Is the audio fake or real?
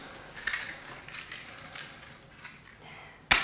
real